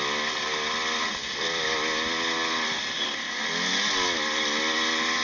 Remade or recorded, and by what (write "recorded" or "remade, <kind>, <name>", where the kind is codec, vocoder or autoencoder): recorded